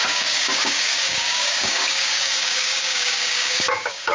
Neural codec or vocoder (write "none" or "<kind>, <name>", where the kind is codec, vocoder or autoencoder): codec, DAC